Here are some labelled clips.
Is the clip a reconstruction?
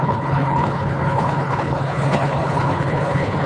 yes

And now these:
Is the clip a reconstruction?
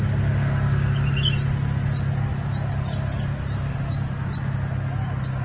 no